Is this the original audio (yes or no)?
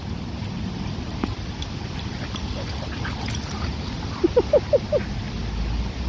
yes